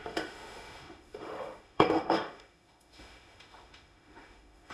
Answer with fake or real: fake